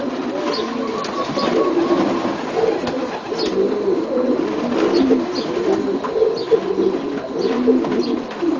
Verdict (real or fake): real